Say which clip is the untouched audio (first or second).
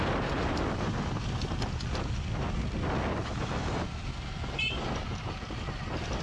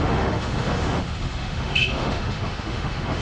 first